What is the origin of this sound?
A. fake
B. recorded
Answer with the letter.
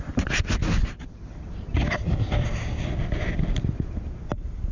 B